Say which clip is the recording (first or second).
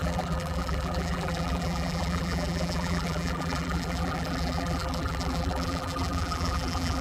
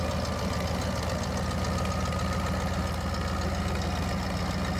second